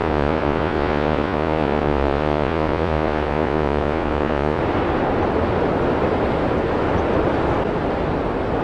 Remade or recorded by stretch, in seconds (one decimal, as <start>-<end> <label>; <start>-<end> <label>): 0.0-4.6 remade; 4.6-8.6 recorded